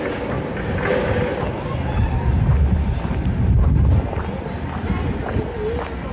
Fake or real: real